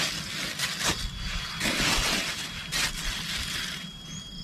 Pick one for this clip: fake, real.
real